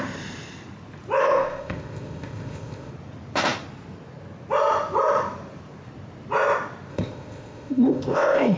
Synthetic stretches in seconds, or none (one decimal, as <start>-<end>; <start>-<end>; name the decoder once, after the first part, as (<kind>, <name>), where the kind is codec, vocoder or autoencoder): 1.2-2.9 (codec, ZipCodec); 6.9-8.6